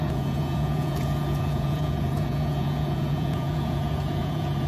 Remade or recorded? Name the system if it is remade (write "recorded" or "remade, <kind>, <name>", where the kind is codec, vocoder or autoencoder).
remade, vocoder, Vocos